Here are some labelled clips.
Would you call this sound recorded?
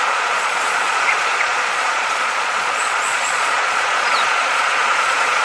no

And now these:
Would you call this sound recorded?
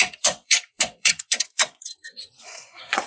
no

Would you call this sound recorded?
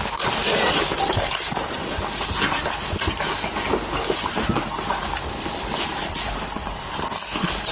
yes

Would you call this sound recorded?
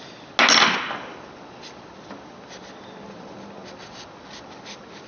yes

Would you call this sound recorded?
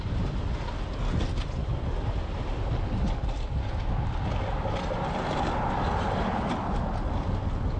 yes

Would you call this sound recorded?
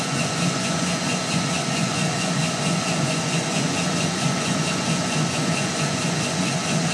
no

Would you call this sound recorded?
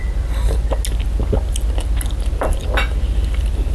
yes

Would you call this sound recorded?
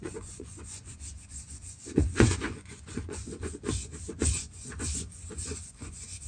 no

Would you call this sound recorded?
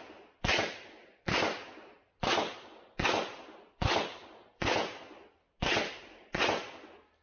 yes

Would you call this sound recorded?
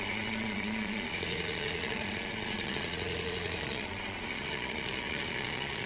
no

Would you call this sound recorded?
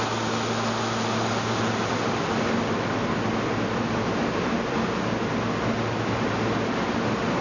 yes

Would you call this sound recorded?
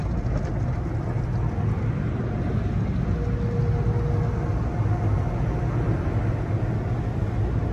yes